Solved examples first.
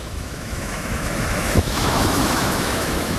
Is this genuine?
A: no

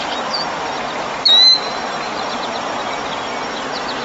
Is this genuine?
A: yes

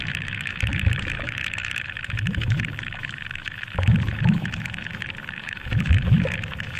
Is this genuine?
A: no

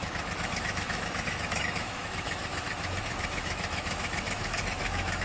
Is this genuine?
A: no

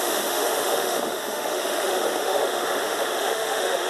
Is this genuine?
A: no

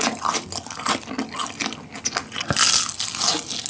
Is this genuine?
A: yes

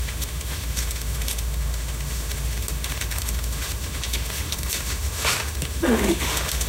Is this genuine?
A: no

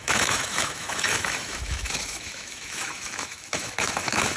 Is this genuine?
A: no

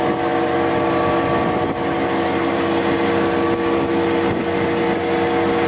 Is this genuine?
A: yes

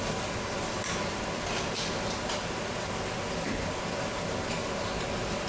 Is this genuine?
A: yes